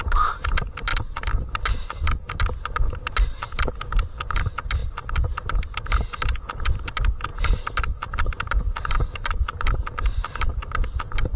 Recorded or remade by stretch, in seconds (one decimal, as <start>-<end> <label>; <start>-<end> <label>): 0.0-0.9 recorded; 0.9-1.5 remade; 1.5-4.8 recorded; 4.8-6.2 remade; 6.2-11.4 recorded